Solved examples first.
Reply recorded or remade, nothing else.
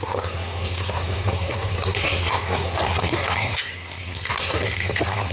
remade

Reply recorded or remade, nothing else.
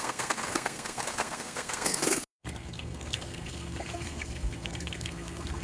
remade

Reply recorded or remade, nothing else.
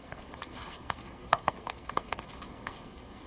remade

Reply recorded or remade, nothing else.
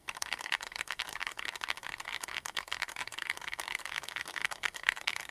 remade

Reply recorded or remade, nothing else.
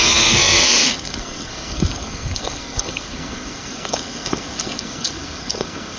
remade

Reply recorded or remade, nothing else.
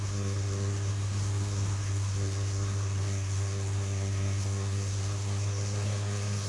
remade